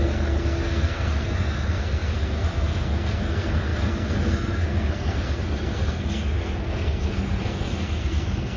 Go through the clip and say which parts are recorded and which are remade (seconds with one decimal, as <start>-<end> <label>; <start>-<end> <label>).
0.0-8.6 remade